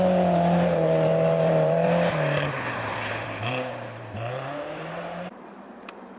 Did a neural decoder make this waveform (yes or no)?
yes